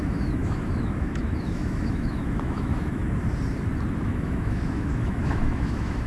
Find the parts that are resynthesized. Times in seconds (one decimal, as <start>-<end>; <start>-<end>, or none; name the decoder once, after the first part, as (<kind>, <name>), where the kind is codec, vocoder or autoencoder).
0.0-3.0 (autoencoder, DAC-VAE); 4.0-6.1

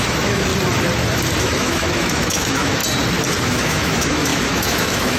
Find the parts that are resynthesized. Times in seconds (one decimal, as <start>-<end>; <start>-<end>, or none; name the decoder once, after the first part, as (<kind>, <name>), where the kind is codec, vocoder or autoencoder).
0.0-0.5 (autoencoder, DAC-VAE); 1.4-2.8; 3.4-5.2